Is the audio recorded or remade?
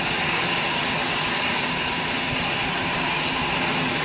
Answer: recorded